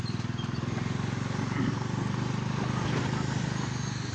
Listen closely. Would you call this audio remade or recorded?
recorded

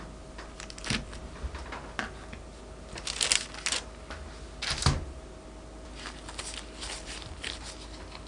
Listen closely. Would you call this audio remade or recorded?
recorded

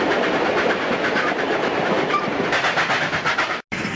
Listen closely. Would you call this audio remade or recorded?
recorded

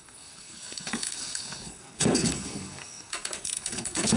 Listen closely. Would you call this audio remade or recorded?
remade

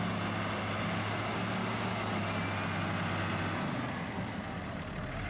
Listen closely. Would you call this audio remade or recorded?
recorded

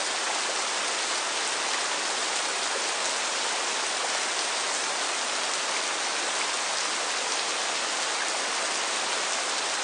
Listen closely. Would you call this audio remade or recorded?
recorded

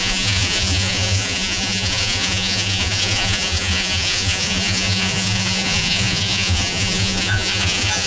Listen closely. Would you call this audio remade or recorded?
remade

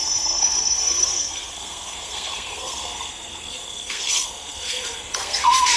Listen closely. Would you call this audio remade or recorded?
remade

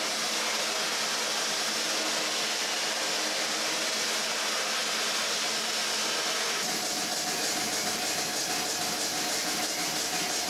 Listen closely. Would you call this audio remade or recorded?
recorded